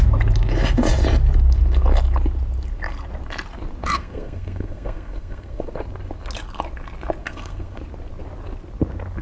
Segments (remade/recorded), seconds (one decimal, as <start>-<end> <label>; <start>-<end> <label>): 0.0-3.8 recorded; 3.8-5.7 remade; 5.7-7.2 recorded; 7.2-7.8 remade; 7.8-9.2 recorded